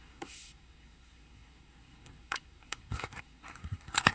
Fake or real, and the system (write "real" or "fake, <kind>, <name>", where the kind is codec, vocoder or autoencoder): fake, codec, SNAC